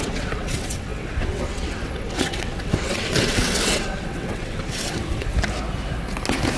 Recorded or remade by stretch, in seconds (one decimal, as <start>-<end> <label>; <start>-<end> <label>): 0.0-5.3 remade; 5.3-6.6 recorded